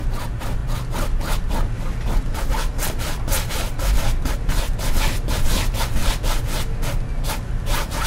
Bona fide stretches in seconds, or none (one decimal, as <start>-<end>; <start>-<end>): 0.0-8.1